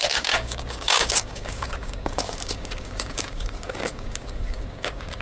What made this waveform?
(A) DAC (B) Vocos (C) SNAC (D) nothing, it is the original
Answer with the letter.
A